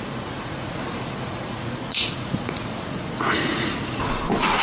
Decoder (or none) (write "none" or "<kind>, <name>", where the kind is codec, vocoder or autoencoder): vocoder, Vocos